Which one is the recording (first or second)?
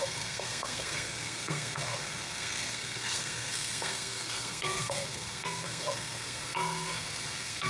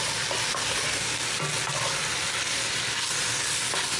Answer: second